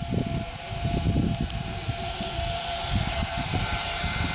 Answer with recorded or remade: remade